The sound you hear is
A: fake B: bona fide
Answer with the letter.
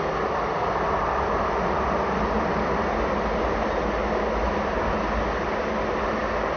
B